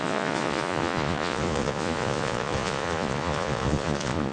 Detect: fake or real fake